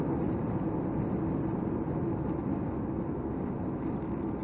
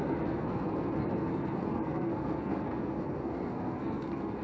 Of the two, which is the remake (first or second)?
second